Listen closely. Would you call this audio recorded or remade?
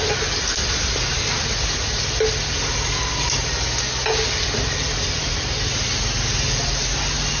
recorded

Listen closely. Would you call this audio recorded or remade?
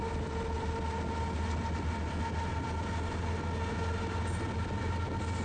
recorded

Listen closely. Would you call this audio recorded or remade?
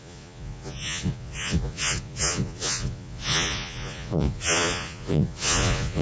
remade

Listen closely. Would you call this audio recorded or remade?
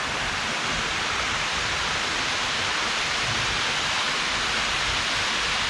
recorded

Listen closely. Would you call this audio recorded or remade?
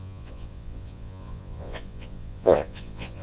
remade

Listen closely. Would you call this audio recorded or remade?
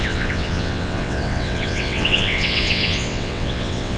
remade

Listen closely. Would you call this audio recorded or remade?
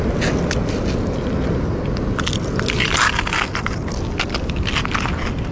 recorded